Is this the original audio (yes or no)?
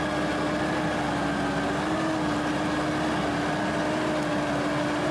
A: yes